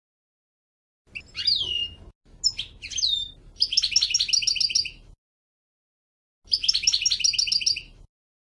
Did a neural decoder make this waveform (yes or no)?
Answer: no